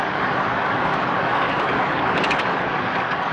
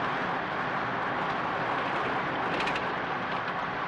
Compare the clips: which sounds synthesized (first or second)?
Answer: first